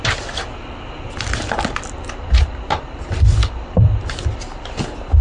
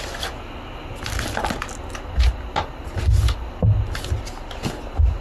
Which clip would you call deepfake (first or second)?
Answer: first